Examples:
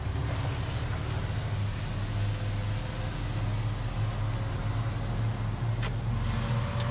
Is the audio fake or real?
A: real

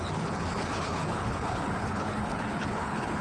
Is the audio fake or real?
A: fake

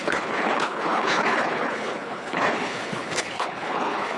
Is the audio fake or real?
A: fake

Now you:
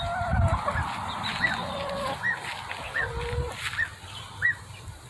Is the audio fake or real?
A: real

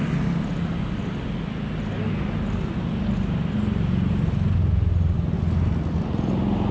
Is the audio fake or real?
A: real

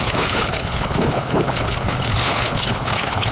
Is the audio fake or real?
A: fake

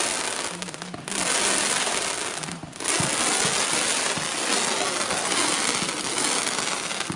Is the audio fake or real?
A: real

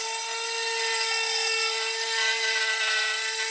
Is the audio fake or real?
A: real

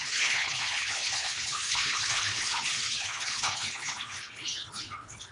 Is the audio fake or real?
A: fake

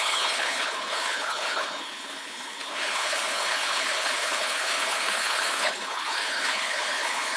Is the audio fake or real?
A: fake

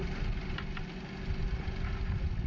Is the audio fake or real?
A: real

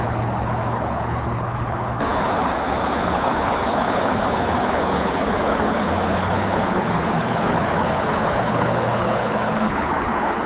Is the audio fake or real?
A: fake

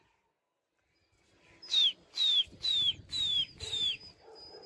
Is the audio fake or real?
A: real